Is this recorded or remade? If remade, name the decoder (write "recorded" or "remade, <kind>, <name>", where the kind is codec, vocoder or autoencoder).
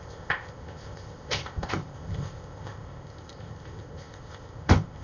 remade, codec, ZipCodec